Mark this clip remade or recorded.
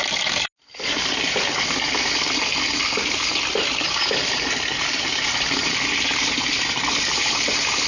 recorded